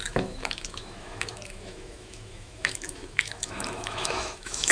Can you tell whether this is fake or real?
fake